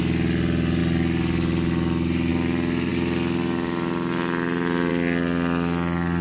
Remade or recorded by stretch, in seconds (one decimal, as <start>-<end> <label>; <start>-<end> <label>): 0.0-6.2 recorded